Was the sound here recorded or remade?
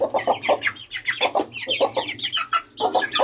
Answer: recorded